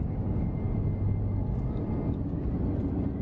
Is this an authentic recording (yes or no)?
yes